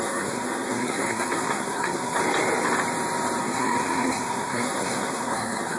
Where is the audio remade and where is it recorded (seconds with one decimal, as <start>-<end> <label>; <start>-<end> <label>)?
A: 0.0-2.2 remade; 2.2-3.4 recorded; 3.4-5.8 remade